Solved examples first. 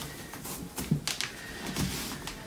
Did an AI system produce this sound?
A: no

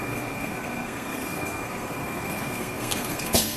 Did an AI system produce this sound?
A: yes